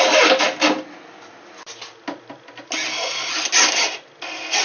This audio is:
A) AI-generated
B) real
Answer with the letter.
B